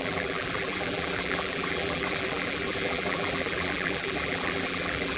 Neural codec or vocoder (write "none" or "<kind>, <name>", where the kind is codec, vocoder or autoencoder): vocoder, BigVGAN v2